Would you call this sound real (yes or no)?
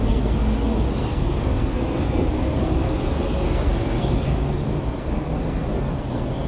no